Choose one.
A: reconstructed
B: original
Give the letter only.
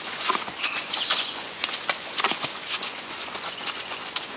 A